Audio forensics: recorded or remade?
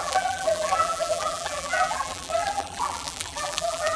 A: remade